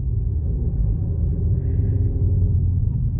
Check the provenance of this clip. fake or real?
real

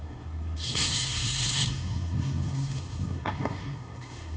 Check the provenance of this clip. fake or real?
fake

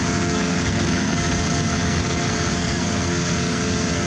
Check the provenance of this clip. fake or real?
fake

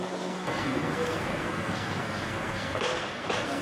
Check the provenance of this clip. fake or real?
fake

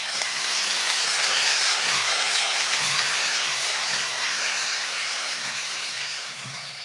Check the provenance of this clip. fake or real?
fake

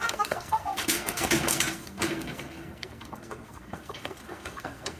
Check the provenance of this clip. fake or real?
fake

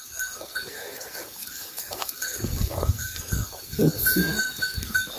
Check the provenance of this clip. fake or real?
fake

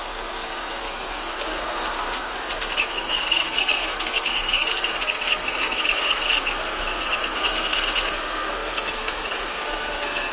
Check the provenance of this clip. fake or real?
fake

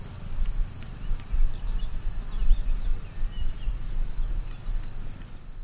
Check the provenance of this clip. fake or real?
real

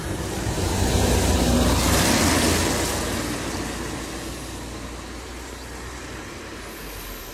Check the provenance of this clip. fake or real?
real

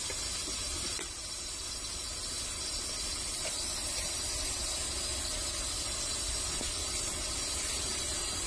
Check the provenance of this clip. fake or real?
real